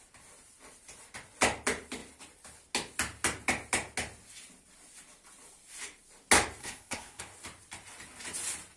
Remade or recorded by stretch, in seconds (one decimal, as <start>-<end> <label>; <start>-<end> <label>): 0.0-6.6 recorded; 6.6-7.2 remade; 7.2-8.8 recorded